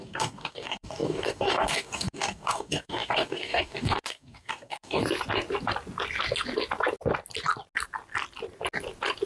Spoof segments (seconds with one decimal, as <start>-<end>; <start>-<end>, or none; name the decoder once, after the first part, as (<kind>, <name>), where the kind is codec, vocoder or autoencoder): 0.0-5.0 (codec, DAC)